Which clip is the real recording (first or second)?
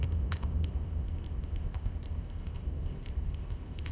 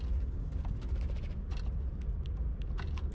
second